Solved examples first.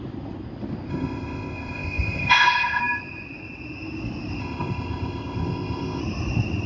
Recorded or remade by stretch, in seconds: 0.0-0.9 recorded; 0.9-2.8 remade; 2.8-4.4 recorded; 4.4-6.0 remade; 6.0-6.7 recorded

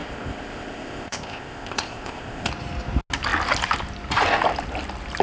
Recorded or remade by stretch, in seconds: 0.0-2.5 remade; 2.5-5.2 recorded

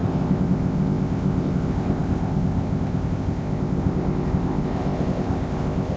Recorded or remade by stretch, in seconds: 0.0-6.0 remade

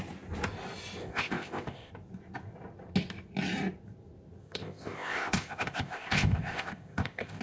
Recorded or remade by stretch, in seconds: 0.0-1.0 recorded; 1.0-1.9 remade; 1.9-4.4 recorded; 4.4-7.4 remade

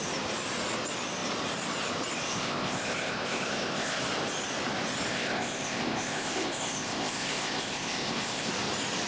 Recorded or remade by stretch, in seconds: 0.0-2.3 recorded; 2.3-4.0 remade; 4.0-5.1 recorded; 5.1-8.5 remade; 8.5-9.1 recorded

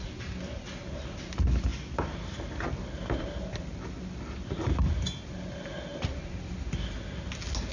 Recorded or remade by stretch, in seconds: 0.0-7.7 recorded

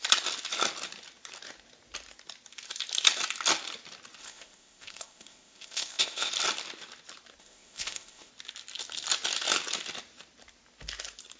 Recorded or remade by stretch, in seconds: 0.0-4.2 recorded; 4.2-6.3 remade; 6.3-7.4 recorded; 7.4-8.3 remade; 8.3-11.4 recorded

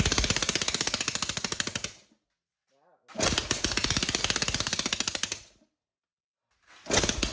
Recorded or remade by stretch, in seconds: 0.0-7.3 recorded